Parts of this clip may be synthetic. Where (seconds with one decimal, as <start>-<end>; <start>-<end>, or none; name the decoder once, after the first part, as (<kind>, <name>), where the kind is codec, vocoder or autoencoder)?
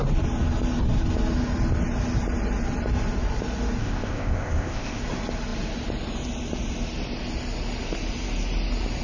3.8-5.0 (codec, ZipCodec)